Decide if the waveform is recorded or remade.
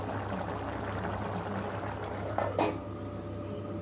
recorded